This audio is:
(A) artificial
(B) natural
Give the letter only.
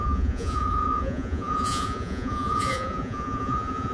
A